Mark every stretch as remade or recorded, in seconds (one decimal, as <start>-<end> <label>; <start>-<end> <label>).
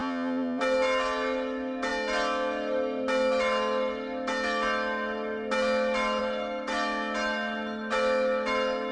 0.0-0.6 remade; 0.6-8.9 recorded